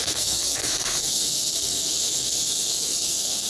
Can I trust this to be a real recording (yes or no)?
no